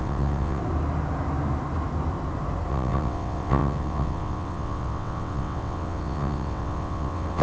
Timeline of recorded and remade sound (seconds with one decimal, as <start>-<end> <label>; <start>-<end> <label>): 0.0-0.6 remade; 0.6-2.7 recorded; 2.7-7.4 remade